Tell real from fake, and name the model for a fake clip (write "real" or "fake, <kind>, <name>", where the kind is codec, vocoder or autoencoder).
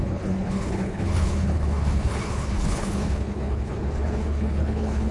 fake, codec, HILCodec